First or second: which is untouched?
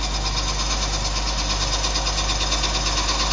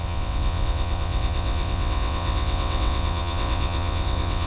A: first